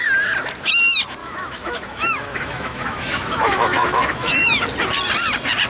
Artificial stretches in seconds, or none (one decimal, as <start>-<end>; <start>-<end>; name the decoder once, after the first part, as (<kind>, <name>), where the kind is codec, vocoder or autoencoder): 1.2-4.6 (autoencoder, DAC-VAE)